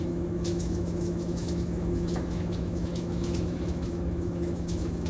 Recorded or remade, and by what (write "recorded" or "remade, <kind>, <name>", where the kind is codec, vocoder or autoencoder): remade, autoencoder, DAC-VAE